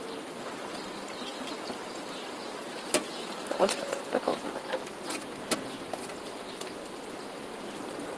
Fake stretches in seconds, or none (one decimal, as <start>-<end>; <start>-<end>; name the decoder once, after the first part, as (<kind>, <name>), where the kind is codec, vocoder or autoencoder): none